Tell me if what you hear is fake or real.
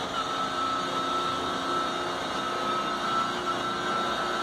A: real